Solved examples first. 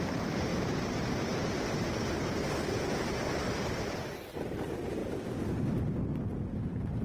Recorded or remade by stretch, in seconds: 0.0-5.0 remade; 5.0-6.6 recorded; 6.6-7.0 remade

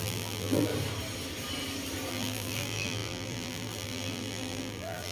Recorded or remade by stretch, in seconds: 0.0-0.7 remade; 0.7-2.1 recorded; 2.1-5.1 remade

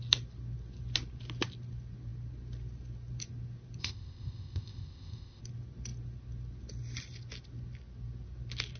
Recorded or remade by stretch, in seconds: 0.0-3.8 recorded; 3.8-5.4 remade; 5.4-8.8 recorded